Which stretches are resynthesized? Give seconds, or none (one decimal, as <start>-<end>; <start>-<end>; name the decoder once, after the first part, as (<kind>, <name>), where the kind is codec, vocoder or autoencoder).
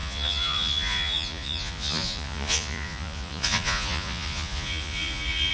0.0-5.5 (vocoder, Vocos)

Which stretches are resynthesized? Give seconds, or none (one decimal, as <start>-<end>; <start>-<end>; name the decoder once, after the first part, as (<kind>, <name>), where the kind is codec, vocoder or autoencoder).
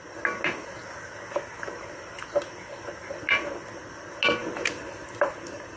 none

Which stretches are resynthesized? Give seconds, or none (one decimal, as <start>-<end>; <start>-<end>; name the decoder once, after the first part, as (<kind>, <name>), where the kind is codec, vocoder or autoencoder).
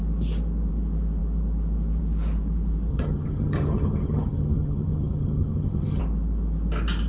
2.9-6.0 (vocoder, HiFi-GAN)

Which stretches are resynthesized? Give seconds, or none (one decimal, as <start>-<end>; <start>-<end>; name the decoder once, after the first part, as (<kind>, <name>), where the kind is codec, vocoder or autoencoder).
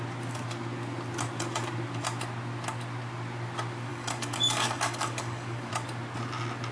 3.9-5.7 (codec, DAC)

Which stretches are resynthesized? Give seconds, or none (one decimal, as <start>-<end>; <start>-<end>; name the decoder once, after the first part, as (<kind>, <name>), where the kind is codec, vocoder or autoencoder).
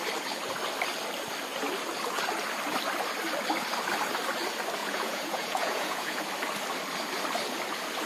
4.8-6.2 (vocoder, Vocos)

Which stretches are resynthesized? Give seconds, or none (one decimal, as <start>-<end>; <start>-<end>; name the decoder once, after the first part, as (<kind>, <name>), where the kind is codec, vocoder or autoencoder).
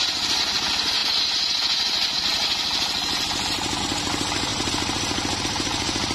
none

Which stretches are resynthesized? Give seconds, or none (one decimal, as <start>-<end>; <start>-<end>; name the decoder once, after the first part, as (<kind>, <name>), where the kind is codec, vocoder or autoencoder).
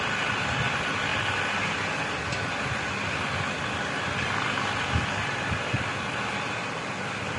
none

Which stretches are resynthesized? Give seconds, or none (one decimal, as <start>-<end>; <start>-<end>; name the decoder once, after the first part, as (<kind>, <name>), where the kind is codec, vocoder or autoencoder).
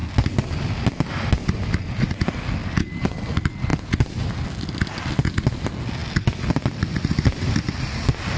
none